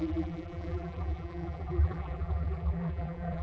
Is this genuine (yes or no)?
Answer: no